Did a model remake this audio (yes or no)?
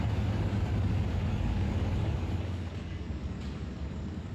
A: yes